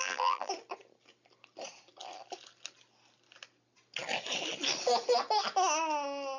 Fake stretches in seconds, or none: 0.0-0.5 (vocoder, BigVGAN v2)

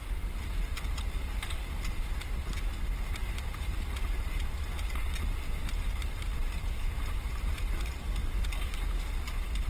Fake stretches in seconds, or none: none